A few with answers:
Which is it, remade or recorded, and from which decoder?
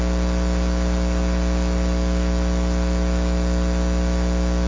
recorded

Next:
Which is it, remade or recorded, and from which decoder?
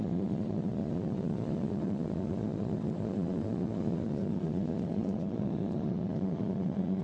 remade, vocoder, Vocos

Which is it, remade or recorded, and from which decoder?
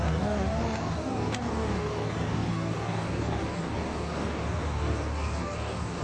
remade, codec, DAC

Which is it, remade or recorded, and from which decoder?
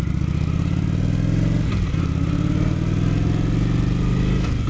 recorded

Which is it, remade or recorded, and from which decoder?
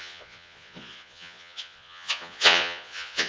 remade, vocoder, Vocos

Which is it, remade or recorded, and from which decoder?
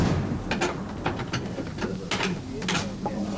recorded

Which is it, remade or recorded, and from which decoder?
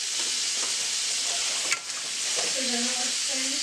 recorded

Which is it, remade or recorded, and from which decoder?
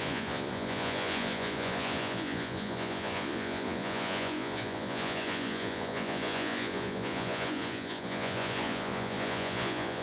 remade, vocoder, Vocos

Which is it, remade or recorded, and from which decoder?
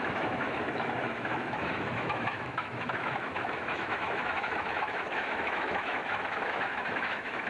remade, autoencoder, DAC-VAE